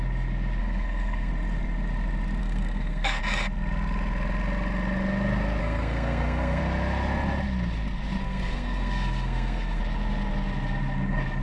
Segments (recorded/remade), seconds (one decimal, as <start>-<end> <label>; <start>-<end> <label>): 0.0-0.6 recorded; 0.6-1.3 remade; 1.3-2.4 recorded; 2.4-3.2 remade; 3.2-5.6 recorded; 5.6-6.6 remade; 6.6-8.2 recorded; 8.2-9.8 remade; 9.8-11.4 recorded